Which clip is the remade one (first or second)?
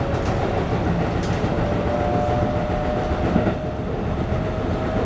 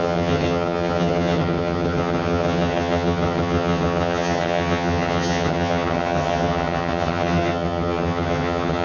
second